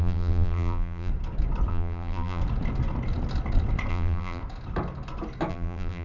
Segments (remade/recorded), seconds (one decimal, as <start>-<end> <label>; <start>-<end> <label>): 0.0-1.1 remade; 1.1-1.7 recorded; 1.7-2.4 remade; 2.4-3.9 recorded; 3.9-4.4 remade; 4.4-5.5 recorded; 5.5-6.0 remade